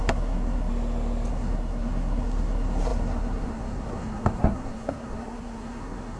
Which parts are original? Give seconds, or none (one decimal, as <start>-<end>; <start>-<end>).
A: 0.7-1.3